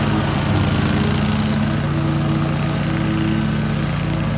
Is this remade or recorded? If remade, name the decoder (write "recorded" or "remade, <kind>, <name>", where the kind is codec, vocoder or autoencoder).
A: recorded